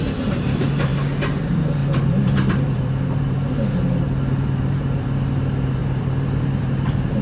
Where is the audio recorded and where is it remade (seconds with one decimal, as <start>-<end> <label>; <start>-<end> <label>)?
0.0-0.9 remade; 0.9-1.4 recorded; 1.4-7.2 remade